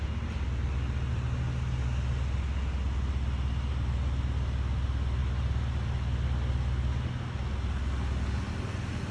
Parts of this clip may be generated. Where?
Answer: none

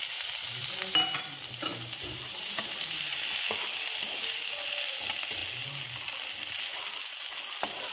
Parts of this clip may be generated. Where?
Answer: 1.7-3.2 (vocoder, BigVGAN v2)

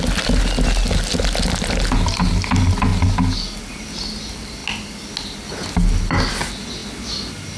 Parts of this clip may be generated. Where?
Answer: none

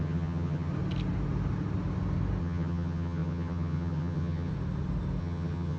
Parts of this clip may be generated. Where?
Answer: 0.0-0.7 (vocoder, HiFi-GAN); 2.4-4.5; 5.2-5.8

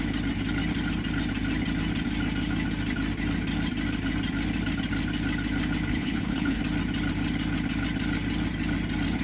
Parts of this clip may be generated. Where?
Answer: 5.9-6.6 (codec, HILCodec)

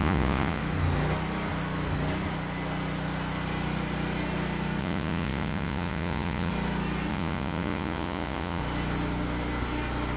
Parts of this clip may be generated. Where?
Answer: 0.0-0.6 (vocoder, Vocos); 4.8-6.5; 7.1-8.6

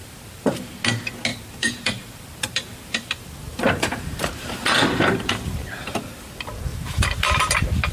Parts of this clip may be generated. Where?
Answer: 0.0-0.6 (vocoder, BigVGAN v2); 1.3-5.5; 6.7-7.5